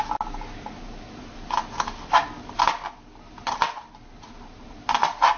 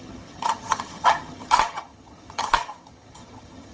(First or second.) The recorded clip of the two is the first